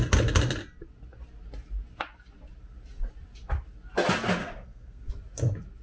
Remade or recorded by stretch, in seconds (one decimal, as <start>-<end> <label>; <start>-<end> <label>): 0.0-4.4 recorded; 4.4-5.1 remade; 5.1-5.8 recorded